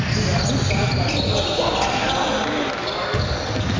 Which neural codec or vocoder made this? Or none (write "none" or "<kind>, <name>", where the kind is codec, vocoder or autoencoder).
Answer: none